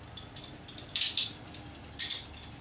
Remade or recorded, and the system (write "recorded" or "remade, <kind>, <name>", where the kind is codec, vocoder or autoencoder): recorded